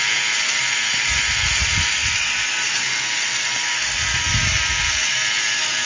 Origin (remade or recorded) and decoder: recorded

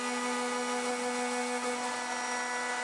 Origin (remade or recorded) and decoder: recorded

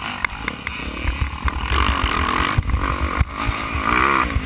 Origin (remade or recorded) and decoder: recorded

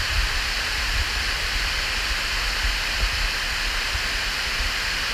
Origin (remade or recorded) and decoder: recorded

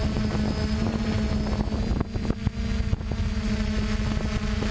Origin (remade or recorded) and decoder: recorded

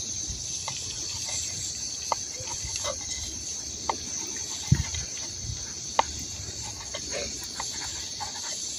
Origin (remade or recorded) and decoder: recorded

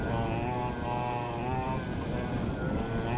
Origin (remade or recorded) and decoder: recorded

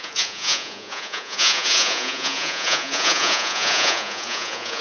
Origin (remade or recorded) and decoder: remade, vocoder, Vocos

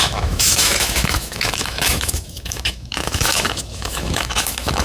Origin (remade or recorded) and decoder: remade, autoencoder, DAC-VAE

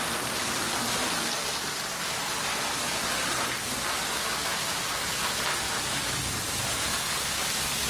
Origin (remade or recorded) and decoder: recorded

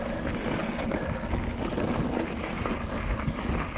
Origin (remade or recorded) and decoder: recorded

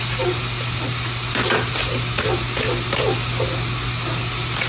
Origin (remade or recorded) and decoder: recorded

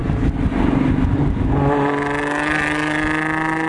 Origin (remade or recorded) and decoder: recorded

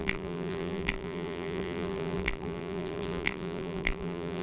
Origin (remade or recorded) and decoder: remade, vocoder, BigVGAN v2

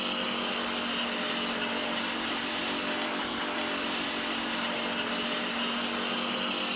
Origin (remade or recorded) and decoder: recorded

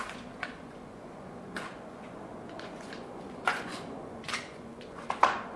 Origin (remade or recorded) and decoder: remade, vocoder, Vocos